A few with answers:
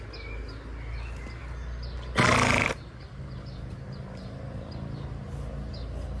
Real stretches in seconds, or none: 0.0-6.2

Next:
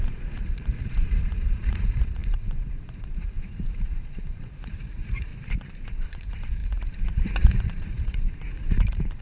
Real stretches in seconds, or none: 5.3-5.9

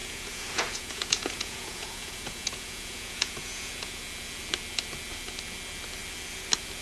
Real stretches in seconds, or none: 4.0-6.8